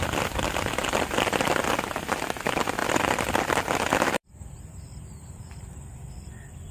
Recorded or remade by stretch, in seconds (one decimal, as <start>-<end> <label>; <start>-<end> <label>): 0.0-0.8 recorded; 0.8-1.4 remade; 1.4-2.8 recorded; 2.8-3.3 remade; 3.3-4.2 recorded; 4.2-6.7 remade